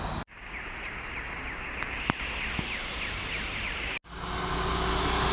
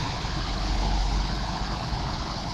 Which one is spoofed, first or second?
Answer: second